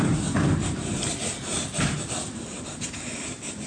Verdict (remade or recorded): recorded